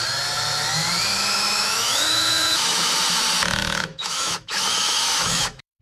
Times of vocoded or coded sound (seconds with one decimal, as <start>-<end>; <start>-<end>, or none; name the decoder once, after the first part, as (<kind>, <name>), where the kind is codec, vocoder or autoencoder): 1.1-2.9 (autoencoder, DAC-VAE); 3.6-5.8